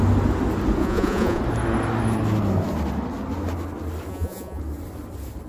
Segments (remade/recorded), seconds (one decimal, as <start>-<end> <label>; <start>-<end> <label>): 0.0-0.8 recorded; 0.8-1.4 remade; 1.4-4.1 recorded; 4.1-4.6 remade; 4.6-5.5 recorded